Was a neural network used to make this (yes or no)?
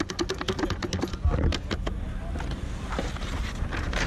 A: no